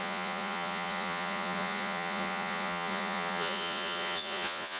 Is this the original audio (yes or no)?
no